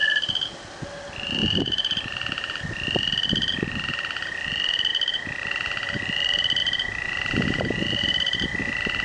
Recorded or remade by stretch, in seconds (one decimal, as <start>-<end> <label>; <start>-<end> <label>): 0.0-1.4 recorded; 1.4-2.6 remade; 2.6-4.9 recorded; 4.9-5.5 remade; 5.5-6.6 recorded; 6.6-8.4 remade; 8.4-9.0 recorded